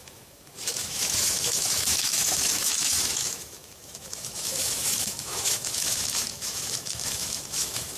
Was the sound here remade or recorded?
remade